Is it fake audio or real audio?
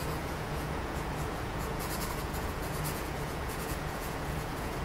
fake